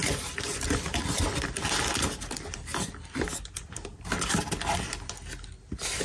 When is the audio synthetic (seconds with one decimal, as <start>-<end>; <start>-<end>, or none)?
none